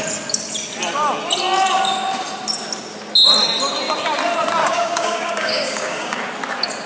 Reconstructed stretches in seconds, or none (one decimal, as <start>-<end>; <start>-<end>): 4.6-6.2